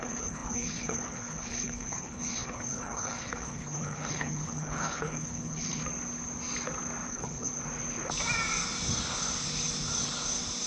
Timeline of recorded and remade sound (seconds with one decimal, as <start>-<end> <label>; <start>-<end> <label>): 0.0-5.8 remade; 5.8-7.1 recorded; 7.1-7.5 remade; 7.5-10.7 recorded